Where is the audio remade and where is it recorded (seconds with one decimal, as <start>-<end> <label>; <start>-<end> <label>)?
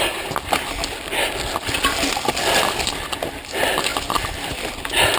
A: 0.0-2.4 remade; 2.4-3.4 recorded; 3.4-5.2 remade